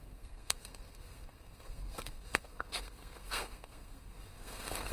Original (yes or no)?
no